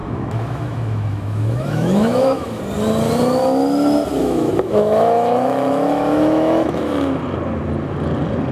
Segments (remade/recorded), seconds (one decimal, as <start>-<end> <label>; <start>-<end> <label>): 0.0-2.6 remade; 2.6-4.2 recorded; 4.2-7.2 remade; 7.2-8.5 recorded